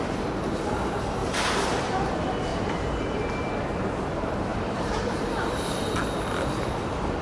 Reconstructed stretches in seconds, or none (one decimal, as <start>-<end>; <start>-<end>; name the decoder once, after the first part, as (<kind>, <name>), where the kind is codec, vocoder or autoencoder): 1.2-2.1 (vocoder, BigVGAN v2); 2.5-3.3; 4.5-5.8

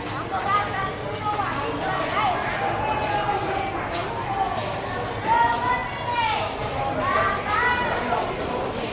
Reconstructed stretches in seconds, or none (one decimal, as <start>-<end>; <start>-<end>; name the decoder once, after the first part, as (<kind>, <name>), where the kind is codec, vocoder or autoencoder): none